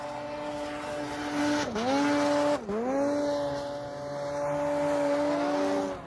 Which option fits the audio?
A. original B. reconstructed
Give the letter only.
A